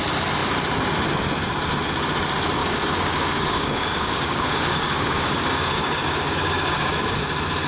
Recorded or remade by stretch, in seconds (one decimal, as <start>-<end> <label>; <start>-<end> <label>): 0.0-2.6 recorded; 2.6-7.2 remade; 7.2-7.7 recorded